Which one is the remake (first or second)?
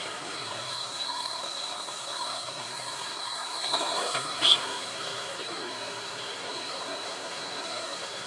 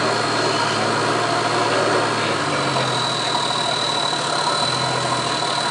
first